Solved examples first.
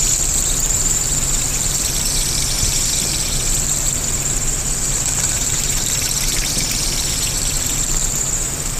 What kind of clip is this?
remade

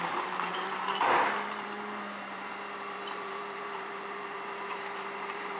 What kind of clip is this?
remade